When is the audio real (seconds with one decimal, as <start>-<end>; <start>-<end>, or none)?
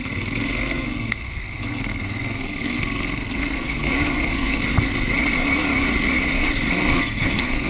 4.6-6.7